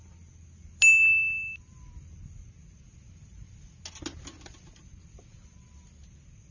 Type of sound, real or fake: real